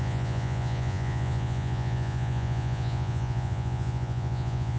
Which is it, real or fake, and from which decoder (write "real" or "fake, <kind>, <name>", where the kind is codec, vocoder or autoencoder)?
fake, vocoder, Vocos